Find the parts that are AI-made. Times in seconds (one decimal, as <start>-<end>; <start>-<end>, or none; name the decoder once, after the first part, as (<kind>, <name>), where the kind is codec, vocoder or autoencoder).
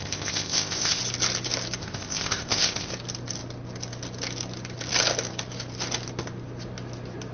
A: 0.0-1.0 (codec, ZipCodec); 1.8-2.9